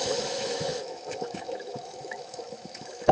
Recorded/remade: remade